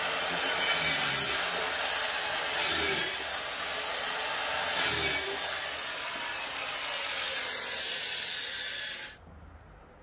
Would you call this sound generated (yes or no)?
no